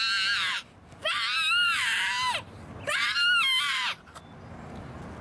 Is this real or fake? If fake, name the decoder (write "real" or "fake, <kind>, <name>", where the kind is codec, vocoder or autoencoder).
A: real